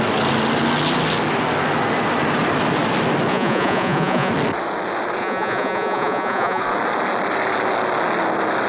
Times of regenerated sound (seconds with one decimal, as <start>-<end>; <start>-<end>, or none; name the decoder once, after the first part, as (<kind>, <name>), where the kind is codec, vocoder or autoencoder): 3.3-4.3 (vocoder, Vocos); 5.2-6.6